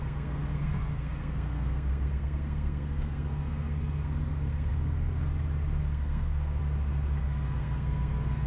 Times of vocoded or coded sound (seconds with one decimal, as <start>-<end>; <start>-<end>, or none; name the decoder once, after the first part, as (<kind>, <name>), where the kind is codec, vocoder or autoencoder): 0.0-5.3 (codec, SNAC); 5.8-6.6; 7.2-8.5